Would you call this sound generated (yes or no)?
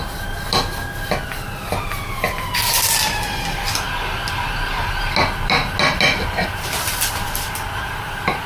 no